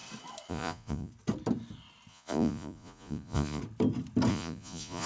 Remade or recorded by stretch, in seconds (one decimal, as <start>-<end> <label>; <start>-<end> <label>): 0.0-0.5 recorded; 0.5-1.1 remade; 1.1-2.1 recorded; 2.1-3.6 remade; 3.6-4.3 recorded; 4.3-5.1 remade